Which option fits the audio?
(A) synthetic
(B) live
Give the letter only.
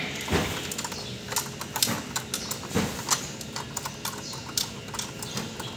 B